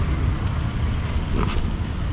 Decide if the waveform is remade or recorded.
recorded